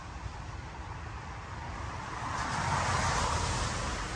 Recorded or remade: recorded